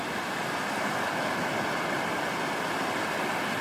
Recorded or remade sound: recorded